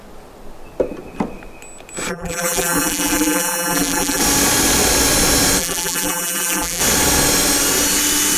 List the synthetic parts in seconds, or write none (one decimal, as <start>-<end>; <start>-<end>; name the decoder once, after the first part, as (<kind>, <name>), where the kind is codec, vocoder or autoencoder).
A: 2.1-4.2 (vocoder, BigVGAN v2); 5.6-6.8